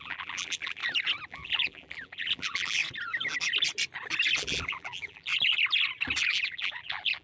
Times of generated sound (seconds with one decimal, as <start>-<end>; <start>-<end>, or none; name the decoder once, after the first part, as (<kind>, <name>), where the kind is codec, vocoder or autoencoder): 0.0-0.8 (vocoder, BigVGAN v2); 1.3-2.8; 4.4-5.3; 6.2-7.2

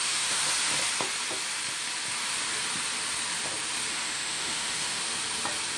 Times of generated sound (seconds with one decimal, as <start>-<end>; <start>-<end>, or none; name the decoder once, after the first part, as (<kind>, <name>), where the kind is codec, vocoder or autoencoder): 0.0-0.4 (autoencoder, DAC-VAE); 3.9-5.0

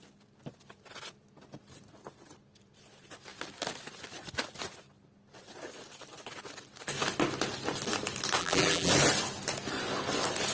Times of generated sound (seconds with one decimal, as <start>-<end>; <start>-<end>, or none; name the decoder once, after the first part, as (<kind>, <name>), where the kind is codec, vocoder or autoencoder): 8.4-8.9 (vocoder, BigVGAN v2)

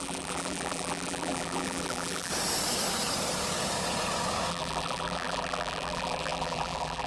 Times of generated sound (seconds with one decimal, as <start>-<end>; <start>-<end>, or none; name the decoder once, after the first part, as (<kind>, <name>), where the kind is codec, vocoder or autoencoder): 0.0-2.3 (vocoder, BigVGAN v2); 4.5-7.1

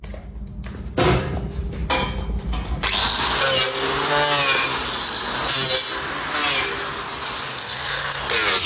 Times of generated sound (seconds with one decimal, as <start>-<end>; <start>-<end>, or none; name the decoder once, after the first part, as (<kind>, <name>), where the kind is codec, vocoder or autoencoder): 7.5-8.2 (codec, SNAC)

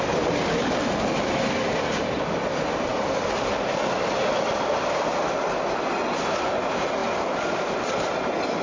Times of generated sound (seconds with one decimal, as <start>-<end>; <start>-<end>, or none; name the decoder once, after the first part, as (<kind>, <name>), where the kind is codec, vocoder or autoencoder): none

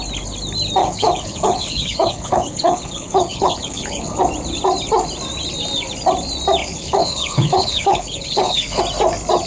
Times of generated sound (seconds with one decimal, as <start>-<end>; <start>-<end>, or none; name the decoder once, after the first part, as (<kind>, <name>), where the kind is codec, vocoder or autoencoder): 0.8-4.2 (codec, HILCodec); 6.6-8.8